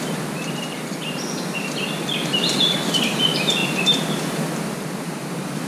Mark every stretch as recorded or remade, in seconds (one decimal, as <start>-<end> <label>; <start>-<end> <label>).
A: 0.0-5.7 recorded